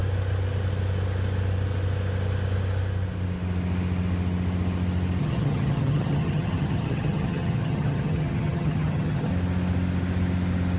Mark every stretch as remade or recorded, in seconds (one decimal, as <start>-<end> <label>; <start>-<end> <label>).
0.0-5.2 recorded; 5.2-9.3 remade; 9.3-10.8 recorded